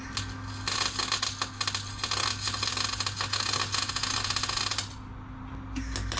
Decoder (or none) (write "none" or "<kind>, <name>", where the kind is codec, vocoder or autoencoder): none